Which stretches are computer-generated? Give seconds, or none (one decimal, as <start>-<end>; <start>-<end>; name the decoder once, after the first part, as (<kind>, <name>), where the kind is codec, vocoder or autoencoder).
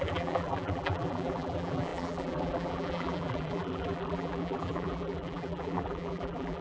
0.0-6.6 (vocoder, BigVGAN v2)